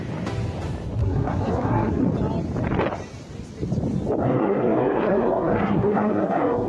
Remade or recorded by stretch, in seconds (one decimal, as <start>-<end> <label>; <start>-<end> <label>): 0.0-1.0 recorded; 1.0-2.0 remade; 2.0-4.2 recorded; 4.2-6.7 remade